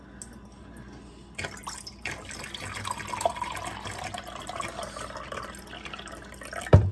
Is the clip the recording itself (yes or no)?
yes